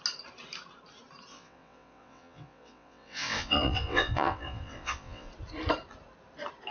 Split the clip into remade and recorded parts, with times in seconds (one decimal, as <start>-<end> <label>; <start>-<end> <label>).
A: 0.0-1.3 recorded; 1.3-5.3 remade; 5.3-6.7 recorded